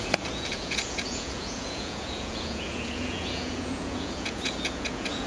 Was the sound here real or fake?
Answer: fake